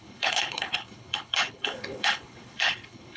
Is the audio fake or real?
fake